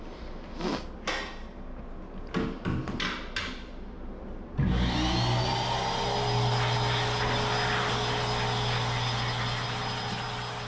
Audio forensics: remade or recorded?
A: recorded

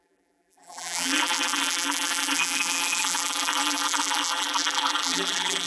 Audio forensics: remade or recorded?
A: remade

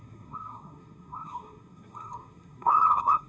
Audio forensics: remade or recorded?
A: remade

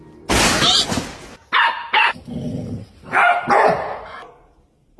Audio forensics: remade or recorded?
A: recorded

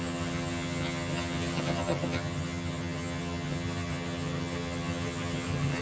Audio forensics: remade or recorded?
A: remade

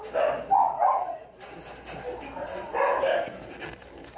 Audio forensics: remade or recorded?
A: recorded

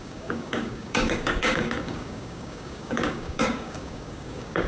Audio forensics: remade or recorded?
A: remade